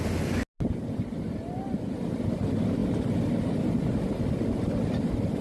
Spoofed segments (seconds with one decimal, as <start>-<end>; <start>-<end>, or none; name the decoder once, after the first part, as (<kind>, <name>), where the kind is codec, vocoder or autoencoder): none